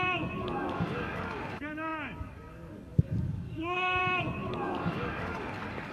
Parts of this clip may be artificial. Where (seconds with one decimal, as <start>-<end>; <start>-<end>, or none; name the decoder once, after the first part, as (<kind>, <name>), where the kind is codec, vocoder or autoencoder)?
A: 0.0-5.9 (codec, DAC)